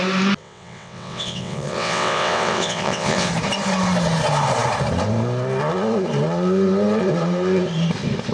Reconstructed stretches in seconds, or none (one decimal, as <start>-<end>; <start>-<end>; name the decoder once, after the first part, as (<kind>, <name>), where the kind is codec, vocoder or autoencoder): 0.4-3.3 (vocoder, WaveNeXt)